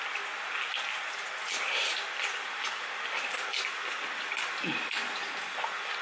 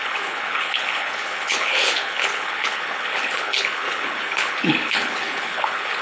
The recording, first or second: first